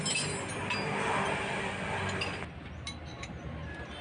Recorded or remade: recorded